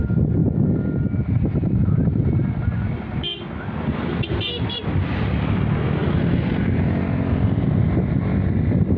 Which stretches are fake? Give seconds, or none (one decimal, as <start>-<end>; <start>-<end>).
none